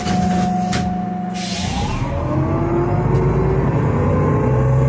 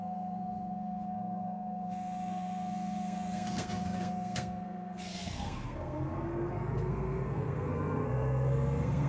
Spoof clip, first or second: second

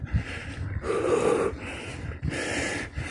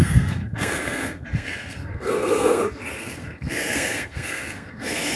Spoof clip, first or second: second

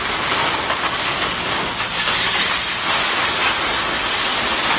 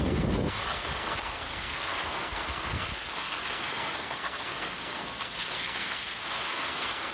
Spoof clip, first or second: second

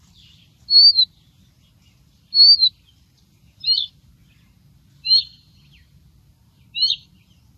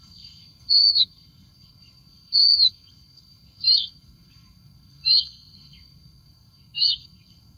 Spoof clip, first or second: second